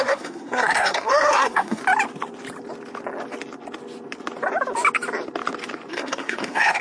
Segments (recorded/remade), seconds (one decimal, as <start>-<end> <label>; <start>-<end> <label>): 0.0-1.8 remade; 1.8-5.9 recorded; 5.9-6.8 remade

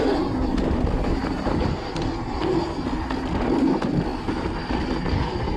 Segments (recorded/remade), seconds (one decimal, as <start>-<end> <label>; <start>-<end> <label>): 0.0-1.2 recorded; 1.2-1.9 remade; 1.9-5.6 recorded

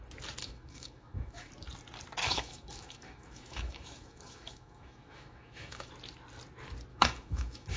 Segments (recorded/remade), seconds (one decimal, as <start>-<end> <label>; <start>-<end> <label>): 0.0-0.4 recorded; 0.4-1.5 remade; 1.5-2.2 recorded; 2.2-5.9 remade; 5.9-6.9 recorded; 6.9-7.8 remade

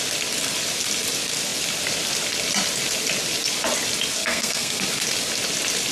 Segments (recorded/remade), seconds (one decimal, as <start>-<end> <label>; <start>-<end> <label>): 0.0-4.2 recorded; 4.2-4.8 remade; 4.8-5.9 recorded